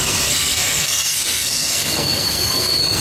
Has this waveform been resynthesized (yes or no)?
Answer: yes